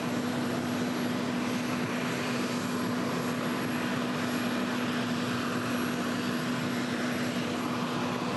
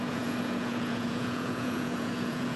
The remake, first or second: second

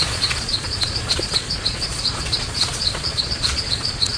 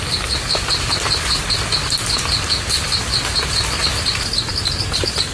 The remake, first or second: first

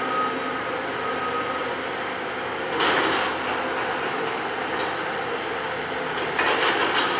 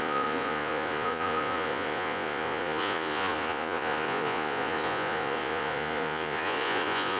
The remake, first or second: second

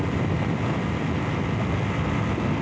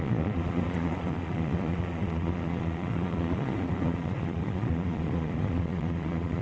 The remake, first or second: second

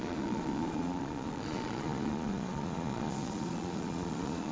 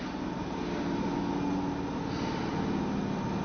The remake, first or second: first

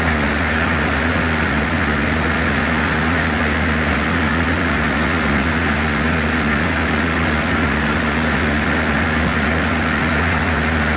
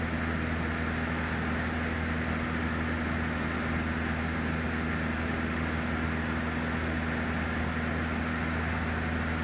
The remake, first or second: first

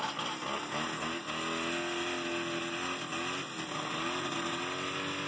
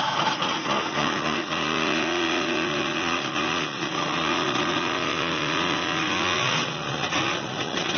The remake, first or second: second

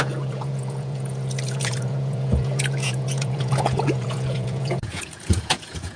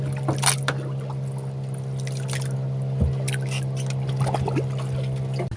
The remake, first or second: first